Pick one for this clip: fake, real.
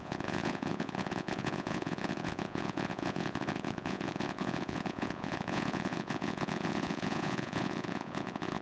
fake